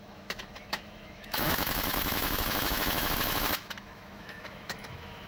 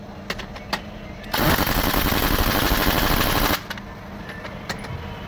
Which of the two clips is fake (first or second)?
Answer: first